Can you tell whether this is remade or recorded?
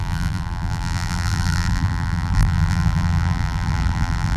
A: remade